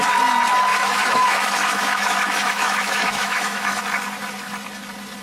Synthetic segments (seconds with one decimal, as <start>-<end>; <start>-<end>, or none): 0.7-3.8